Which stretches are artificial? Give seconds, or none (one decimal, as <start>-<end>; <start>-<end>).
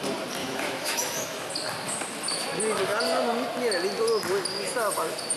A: 0.4-1.5